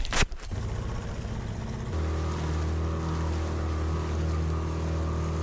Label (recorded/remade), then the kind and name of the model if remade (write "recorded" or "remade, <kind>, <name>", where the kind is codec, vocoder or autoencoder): recorded